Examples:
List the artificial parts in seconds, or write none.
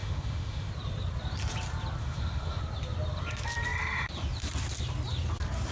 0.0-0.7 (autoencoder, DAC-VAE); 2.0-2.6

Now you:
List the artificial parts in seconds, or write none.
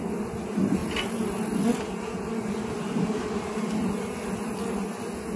none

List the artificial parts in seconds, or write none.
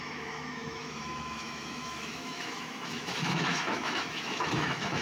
0.0-5.0 (autoencoder, DAC-VAE)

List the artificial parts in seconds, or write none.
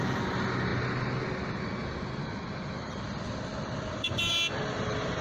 2.2-2.9 (autoencoder, DAC-VAE)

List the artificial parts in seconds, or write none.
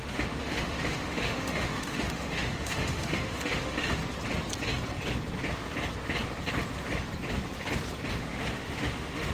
0.0-4.0 (autoencoder, DAC-VAE); 8.1-9.3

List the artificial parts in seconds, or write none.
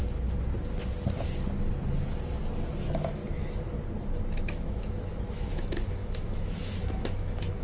2.8-3.2 (autoencoder, DAC-VAE); 4.4-7.6